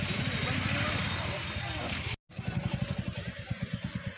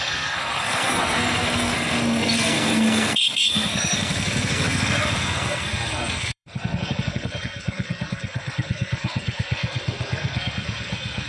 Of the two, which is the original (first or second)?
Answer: first